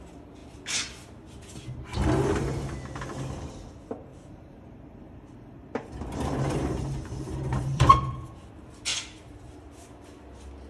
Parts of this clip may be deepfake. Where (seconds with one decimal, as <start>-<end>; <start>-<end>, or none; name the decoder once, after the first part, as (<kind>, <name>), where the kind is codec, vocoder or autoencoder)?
4.1-8.5 (vocoder, BigVGAN v2); 8.9-9.7